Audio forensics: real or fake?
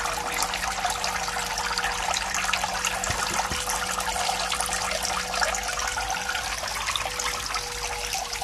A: real